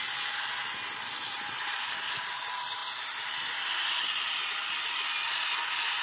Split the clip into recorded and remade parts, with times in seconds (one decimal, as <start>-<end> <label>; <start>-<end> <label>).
0.0-6.0 recorded